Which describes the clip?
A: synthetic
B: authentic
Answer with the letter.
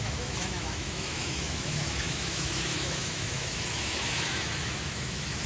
A